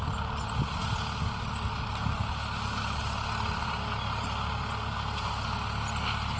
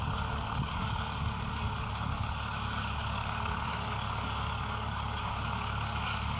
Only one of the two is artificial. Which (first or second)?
second